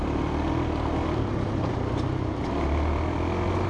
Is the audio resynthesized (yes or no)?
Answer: no